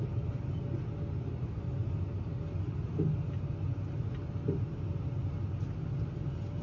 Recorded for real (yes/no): yes